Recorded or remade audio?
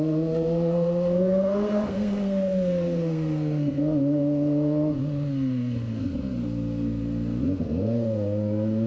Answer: remade